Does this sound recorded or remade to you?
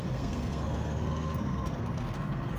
remade